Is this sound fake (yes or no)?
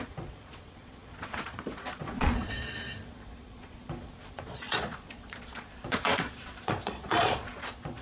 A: yes